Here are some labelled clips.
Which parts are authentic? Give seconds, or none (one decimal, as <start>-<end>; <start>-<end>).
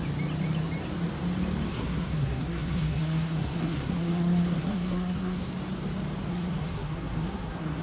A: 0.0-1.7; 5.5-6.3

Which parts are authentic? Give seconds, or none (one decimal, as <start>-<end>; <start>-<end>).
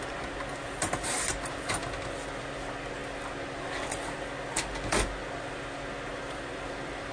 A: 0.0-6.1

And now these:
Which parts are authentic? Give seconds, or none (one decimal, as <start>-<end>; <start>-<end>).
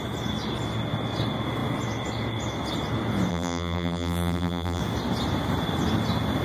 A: 0.0-3.3; 4.8-6.4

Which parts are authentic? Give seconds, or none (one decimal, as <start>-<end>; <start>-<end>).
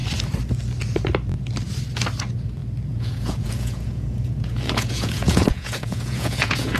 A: 0.0-2.9